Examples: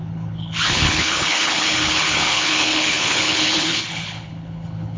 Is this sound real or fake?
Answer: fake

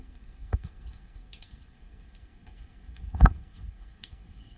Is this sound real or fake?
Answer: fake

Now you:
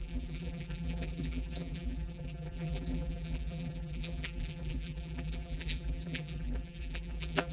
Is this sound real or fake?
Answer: fake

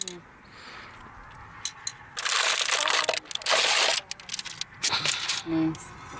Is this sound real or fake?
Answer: real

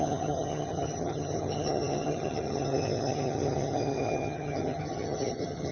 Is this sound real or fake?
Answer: fake